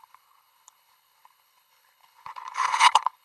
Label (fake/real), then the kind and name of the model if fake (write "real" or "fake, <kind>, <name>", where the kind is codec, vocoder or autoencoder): fake, codec, HILCodec